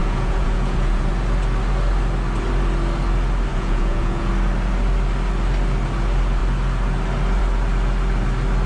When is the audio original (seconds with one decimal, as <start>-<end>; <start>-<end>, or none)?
1.1-3.5; 4.3-8.7